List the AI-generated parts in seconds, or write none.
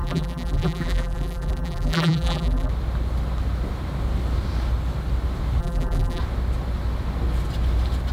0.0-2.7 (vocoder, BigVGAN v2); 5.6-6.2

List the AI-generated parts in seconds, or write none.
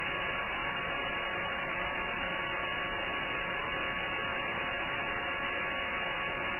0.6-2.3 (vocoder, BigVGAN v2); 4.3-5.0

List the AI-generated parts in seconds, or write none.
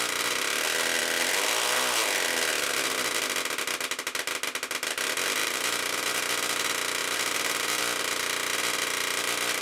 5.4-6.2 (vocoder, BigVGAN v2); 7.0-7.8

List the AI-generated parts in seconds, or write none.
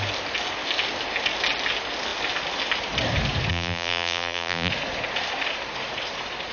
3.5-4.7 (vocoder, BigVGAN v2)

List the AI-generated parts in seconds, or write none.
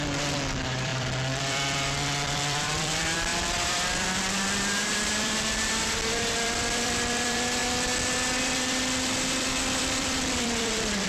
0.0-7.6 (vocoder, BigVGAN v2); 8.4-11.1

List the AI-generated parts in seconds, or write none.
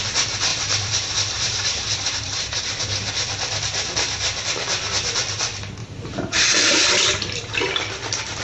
0.5-2.7 (vocoder, BigVGAN v2); 5.8-7.5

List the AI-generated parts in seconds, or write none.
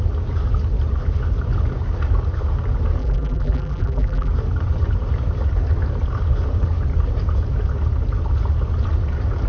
3.0-4.3 (vocoder, BigVGAN v2)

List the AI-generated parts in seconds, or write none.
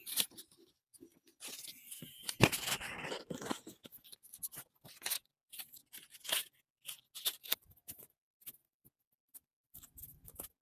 none